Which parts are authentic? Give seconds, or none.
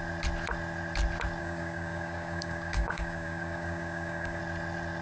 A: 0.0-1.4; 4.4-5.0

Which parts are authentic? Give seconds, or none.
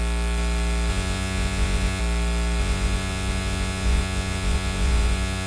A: 0.0-0.9; 2.0-2.6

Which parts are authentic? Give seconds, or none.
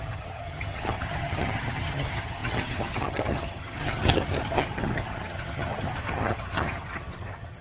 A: none